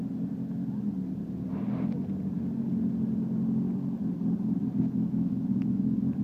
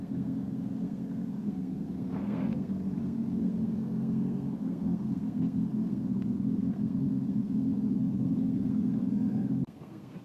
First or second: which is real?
first